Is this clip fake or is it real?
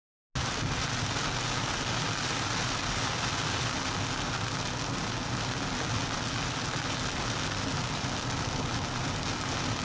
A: real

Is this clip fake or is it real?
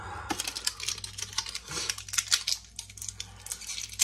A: real